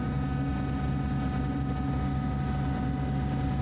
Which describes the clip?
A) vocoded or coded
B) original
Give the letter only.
B